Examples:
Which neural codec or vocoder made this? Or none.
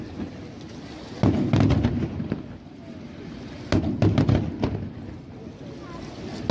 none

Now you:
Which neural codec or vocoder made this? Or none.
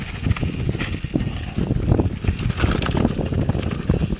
none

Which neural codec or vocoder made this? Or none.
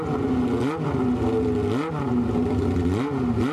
none